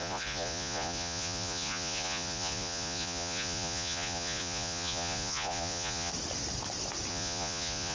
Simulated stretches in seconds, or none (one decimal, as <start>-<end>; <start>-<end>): 0.0-6.1; 7.1-7.9